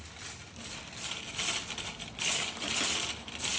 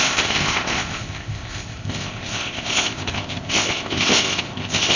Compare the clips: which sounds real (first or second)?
first